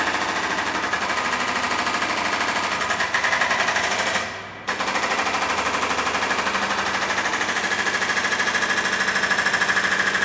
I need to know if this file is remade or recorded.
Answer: recorded